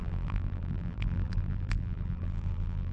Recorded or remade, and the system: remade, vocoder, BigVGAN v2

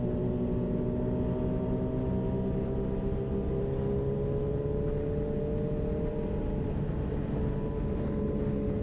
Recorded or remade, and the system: recorded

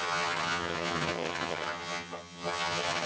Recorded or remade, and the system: remade, vocoder, HiFi-GAN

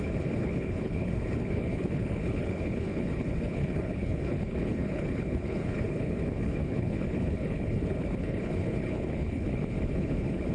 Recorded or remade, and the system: remade, codec, HILCodec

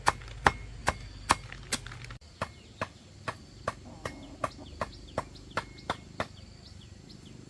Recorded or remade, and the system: recorded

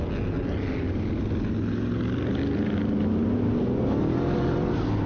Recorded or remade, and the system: recorded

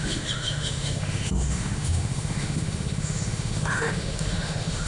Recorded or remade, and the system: remade, autoencoder, DAC-VAE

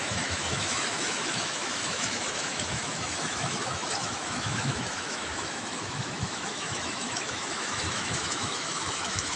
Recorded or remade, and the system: remade, autoencoder, DAC-VAE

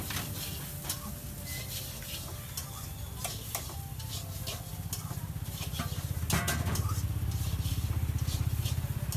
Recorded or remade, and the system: recorded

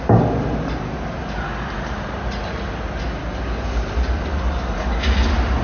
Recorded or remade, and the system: recorded